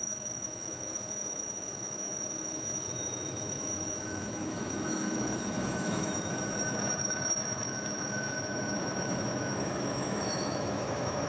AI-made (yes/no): yes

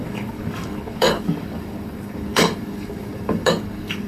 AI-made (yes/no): yes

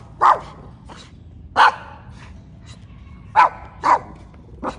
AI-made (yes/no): no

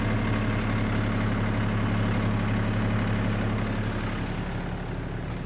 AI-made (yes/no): no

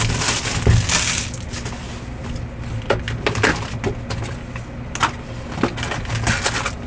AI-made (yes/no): no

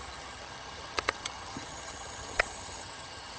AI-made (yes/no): yes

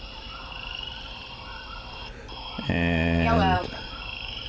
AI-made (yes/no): yes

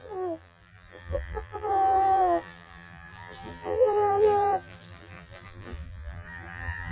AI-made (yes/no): yes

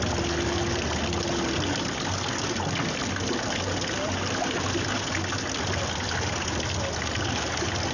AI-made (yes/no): no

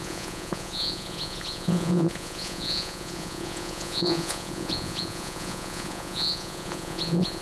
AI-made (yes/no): yes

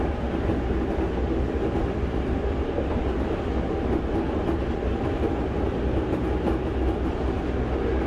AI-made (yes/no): no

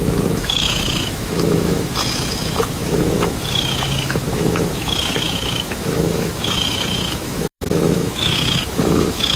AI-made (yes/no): yes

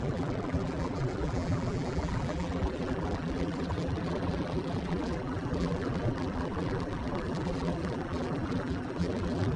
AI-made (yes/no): yes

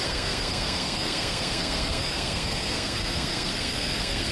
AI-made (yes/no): yes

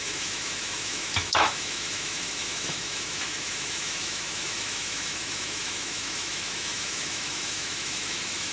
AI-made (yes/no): yes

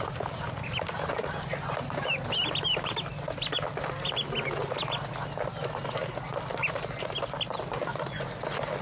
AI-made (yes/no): no